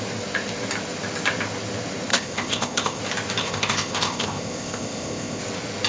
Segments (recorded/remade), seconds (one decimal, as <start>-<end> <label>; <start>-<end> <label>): 0.0-2.1 recorded; 2.1-3.0 remade; 3.0-3.4 recorded; 3.4-5.4 remade; 5.4-5.9 recorded